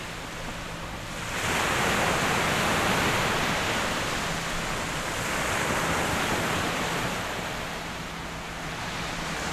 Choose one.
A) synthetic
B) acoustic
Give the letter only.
B